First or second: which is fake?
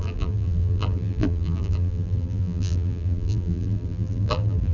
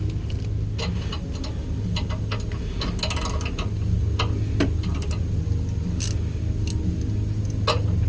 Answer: first